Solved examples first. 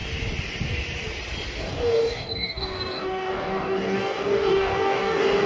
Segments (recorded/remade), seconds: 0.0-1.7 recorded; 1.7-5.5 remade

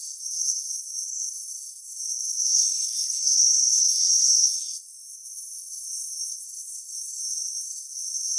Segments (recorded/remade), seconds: 0.0-8.4 remade

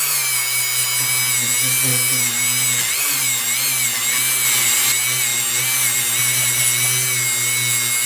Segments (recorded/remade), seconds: 0.0-8.1 recorded

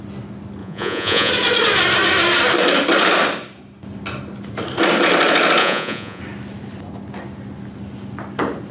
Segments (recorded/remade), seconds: 0.0-0.6 recorded; 0.6-1.3 remade; 1.3-5.6 recorded; 5.6-6.2 remade; 6.2-8.7 recorded

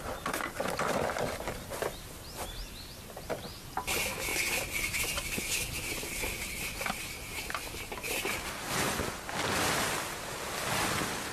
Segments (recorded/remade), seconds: 0.0-11.3 recorded

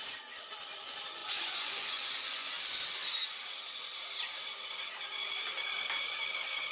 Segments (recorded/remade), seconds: 0.0-1.2 recorded; 1.2-2.5 remade; 2.5-6.7 recorded

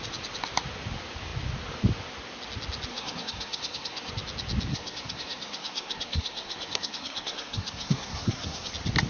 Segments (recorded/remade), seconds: 0.0-2.9 recorded; 2.9-4.1 remade; 4.1-4.7 recorded; 4.7-8.7 remade; 8.7-9.1 recorded

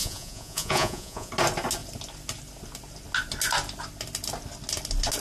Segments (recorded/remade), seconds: 0.0-1.3 remade; 1.3-5.2 recorded